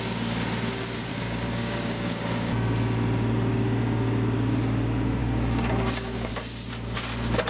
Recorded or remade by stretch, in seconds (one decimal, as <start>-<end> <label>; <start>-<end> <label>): 0.0-1.1 recorded; 1.1-2.5 remade; 2.5-5.2 recorded; 5.2-6.3 remade; 6.3-7.5 recorded